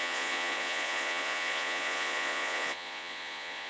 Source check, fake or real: fake